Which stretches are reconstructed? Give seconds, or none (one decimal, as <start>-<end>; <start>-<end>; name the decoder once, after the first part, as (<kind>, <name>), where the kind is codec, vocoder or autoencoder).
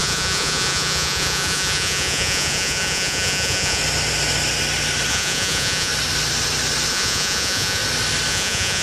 0.0-3.8 (vocoder, Vocos); 5.1-5.9; 6.9-7.8; 8.3-8.8